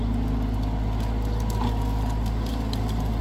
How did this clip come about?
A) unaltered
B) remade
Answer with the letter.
A